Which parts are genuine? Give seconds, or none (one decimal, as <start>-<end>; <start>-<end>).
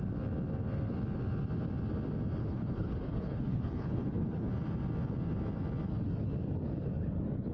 0.0-2.4; 4.5-7.5